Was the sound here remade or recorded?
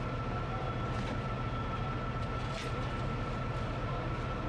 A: recorded